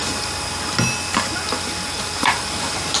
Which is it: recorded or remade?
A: recorded